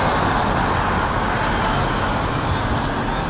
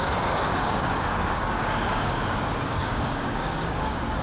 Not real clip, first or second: second